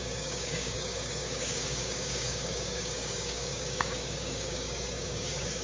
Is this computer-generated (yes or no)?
yes